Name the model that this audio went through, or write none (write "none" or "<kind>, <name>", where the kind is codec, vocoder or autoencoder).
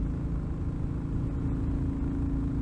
none